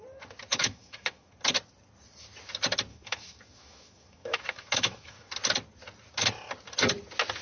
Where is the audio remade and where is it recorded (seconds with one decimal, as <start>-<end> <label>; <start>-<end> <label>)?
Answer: 0.0-0.5 recorded; 0.5-1.3 remade; 1.3-2.9 recorded; 2.9-5.3 remade; 5.3-7.4 recorded